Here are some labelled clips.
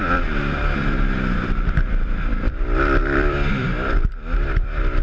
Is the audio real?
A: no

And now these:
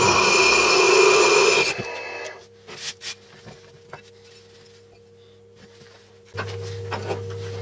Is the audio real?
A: yes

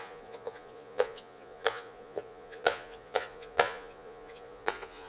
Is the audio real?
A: no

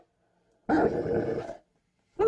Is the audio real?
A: yes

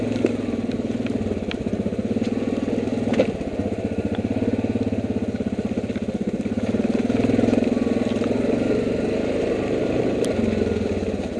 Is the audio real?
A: yes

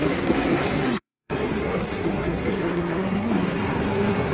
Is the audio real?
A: no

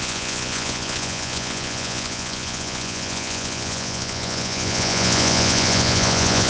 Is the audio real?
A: no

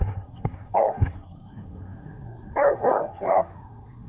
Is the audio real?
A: no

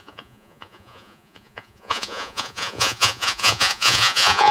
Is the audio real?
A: no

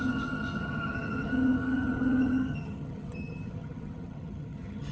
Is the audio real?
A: no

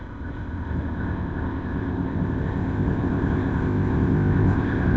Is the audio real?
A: no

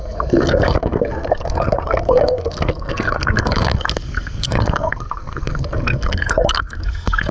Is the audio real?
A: no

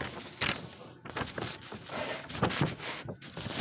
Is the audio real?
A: yes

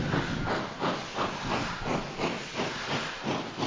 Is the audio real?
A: yes